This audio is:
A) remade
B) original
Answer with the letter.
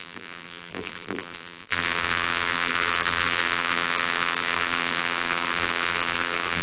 A